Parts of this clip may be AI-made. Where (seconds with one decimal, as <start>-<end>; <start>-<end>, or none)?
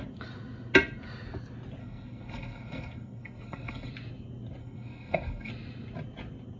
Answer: 1.8-3.9; 4.6-5.5